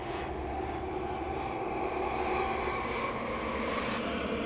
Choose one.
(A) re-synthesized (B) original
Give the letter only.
B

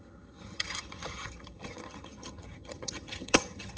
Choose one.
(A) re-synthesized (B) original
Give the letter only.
A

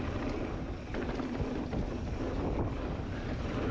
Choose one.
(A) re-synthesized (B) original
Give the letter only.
B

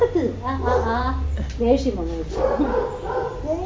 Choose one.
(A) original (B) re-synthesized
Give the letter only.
A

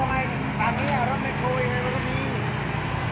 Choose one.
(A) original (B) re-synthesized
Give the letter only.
A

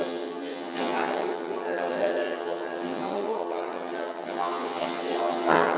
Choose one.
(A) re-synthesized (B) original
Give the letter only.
A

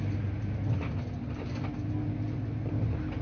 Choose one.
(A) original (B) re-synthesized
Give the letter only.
A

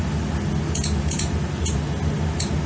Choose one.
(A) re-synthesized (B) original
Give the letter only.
B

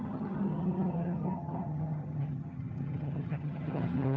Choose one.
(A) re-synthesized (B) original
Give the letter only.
A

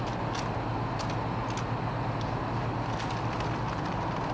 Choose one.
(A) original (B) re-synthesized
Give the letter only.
A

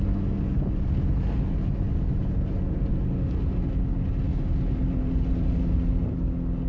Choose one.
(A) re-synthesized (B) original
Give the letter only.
B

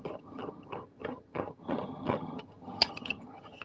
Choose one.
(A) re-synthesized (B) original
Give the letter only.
A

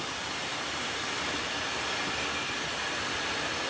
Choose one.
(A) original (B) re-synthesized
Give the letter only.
A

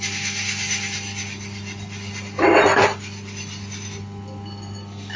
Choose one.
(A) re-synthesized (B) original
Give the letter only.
B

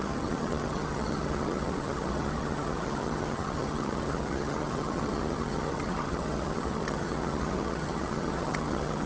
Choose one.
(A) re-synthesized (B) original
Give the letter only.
A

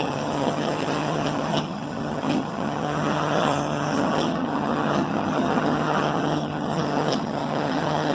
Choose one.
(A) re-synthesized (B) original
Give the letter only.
A